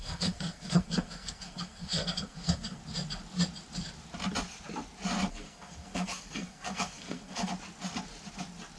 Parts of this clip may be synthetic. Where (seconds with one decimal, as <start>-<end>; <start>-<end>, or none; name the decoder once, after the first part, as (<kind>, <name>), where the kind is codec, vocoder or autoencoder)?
0.0-2.8 (codec, SNAC); 5.3-7.5